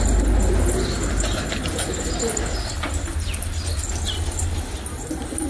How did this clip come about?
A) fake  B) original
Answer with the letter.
B